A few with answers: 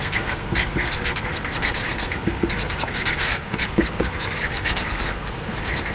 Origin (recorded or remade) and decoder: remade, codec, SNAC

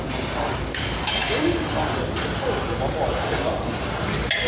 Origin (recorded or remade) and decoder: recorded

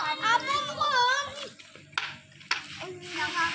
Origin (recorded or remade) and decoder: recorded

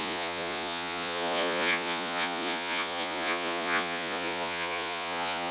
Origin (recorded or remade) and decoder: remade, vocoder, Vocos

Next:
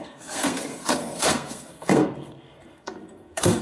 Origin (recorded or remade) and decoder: remade, codec, SNAC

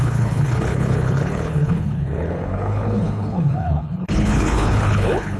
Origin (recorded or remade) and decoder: remade, codec, HILCodec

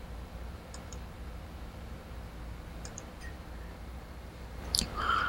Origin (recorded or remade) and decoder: remade, vocoder, BigVGAN v2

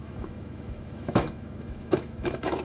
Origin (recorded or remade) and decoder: remade, autoencoder, DAC-VAE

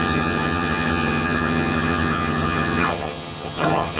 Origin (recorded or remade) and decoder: remade, vocoder, HiFi-GAN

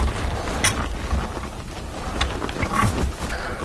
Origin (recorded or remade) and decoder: recorded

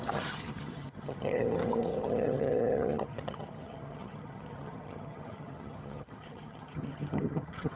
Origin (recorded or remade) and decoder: remade, vocoder, HiFi-GAN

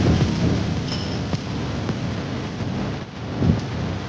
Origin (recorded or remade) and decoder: recorded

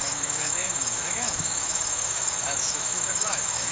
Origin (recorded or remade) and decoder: remade, autoencoder, DAC-VAE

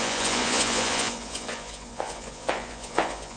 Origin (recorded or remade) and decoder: remade, vocoder, Vocos